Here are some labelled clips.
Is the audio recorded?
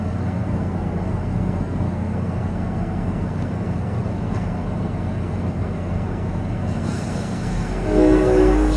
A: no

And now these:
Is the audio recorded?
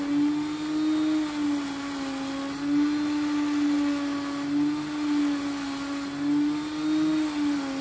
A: yes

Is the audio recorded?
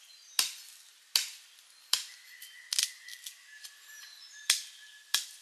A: yes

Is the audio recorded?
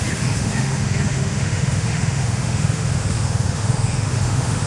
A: no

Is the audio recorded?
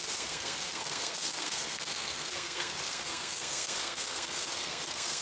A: no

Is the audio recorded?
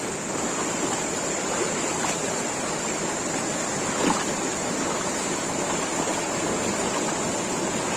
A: yes